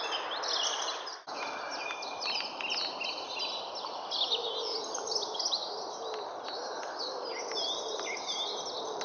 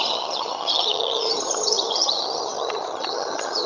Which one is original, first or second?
first